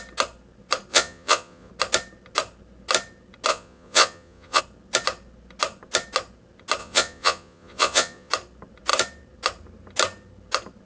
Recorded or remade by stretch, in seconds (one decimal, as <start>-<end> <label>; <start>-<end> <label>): 0.0-0.9 recorded; 0.9-1.7 remade; 1.7-3.5 recorded; 3.5-4.6 remade; 4.6-6.8 recorded; 6.8-8.3 remade; 8.3-10.8 recorded